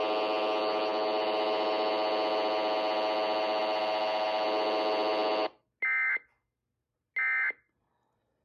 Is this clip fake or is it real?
real